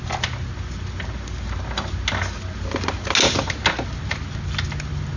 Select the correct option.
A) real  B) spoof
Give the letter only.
A